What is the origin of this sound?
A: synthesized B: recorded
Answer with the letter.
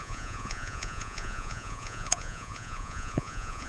A